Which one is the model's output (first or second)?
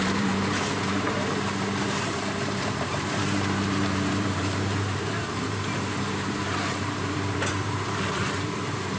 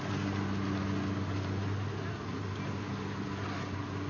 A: first